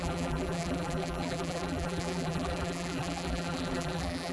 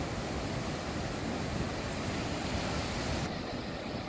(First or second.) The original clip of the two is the second